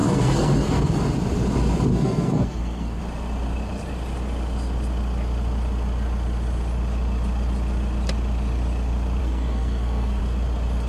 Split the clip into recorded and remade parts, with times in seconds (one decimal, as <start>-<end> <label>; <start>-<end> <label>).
0.0-1.0 remade; 1.0-1.9 recorded; 1.9-3.0 remade; 3.0-9.2 recorded; 9.2-10.2 remade; 10.2-10.9 recorded